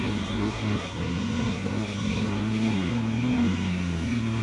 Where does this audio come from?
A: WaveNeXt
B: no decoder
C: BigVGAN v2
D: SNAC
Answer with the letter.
D